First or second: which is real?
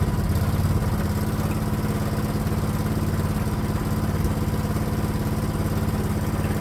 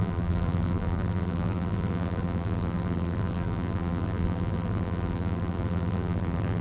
first